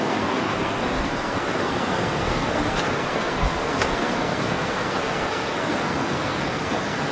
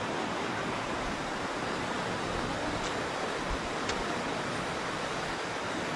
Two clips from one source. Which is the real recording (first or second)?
second